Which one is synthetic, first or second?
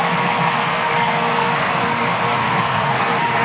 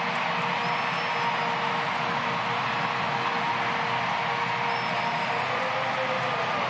first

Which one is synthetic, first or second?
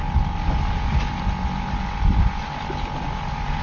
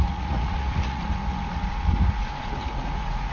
second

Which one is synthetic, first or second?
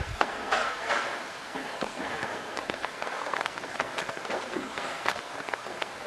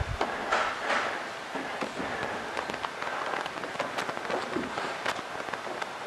first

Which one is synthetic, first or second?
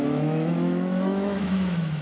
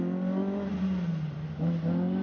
first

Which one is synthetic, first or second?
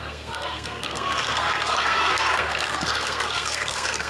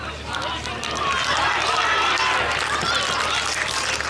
first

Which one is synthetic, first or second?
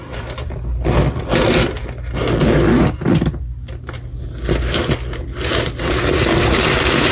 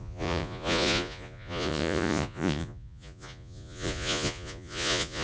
second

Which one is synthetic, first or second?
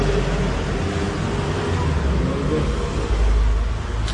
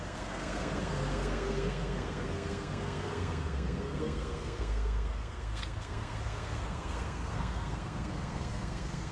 second